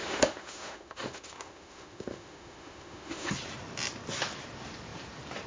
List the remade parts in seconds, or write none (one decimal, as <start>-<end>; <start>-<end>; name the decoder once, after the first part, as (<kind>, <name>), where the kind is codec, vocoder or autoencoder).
0.0-3.3 (autoencoder, DAC-VAE)